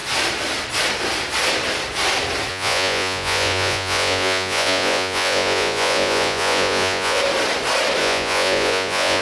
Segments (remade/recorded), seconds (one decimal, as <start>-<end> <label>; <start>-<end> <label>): 0.0-2.5 recorded; 2.5-7.2 remade; 7.2-8.0 recorded; 8.0-9.2 remade